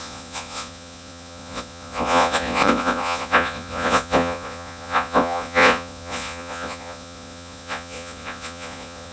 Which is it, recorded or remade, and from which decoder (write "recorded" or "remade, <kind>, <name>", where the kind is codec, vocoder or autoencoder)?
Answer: remade, vocoder, Vocos